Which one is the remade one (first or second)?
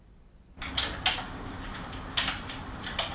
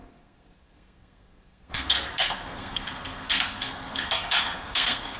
second